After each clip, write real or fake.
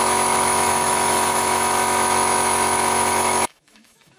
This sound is fake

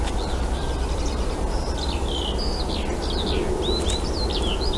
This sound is real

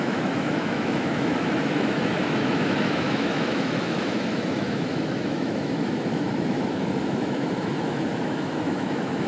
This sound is fake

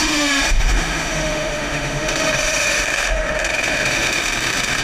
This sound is fake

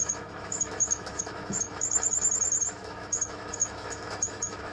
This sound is fake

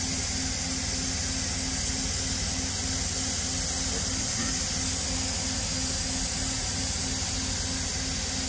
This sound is real